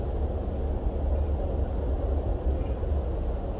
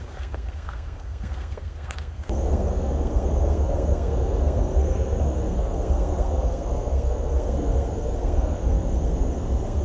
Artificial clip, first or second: second